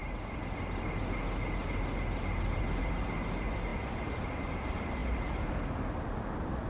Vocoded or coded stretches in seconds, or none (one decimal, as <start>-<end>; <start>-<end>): none